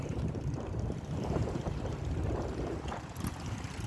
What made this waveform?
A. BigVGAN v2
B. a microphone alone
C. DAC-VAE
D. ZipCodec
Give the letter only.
A